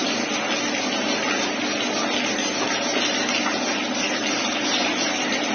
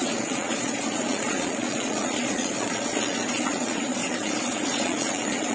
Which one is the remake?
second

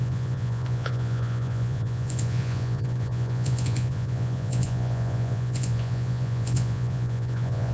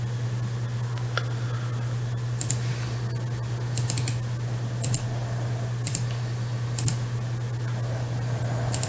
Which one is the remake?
first